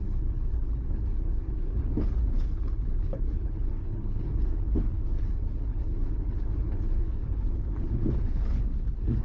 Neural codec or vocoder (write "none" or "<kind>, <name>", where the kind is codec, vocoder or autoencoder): codec, HILCodec